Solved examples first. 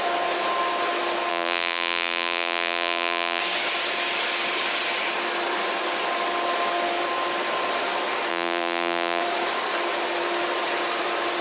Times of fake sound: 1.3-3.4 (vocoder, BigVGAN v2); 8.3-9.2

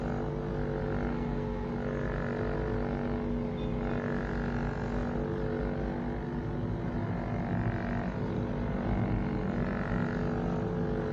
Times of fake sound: 1.1-1.7 (codec, SNAC)

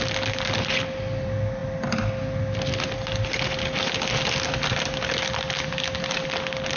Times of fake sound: none

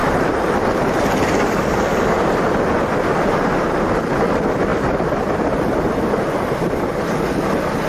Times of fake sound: 0.0-0.6 (vocoder, BigVGAN v2)

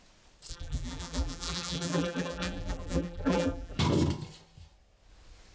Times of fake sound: 0.5-3.8 (vocoder, BigVGAN v2)

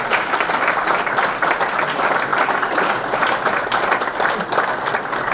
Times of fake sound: none

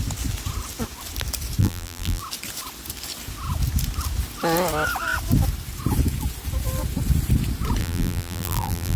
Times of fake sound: 1.6-2.2 (vocoder, BigVGAN v2); 7.8-9.0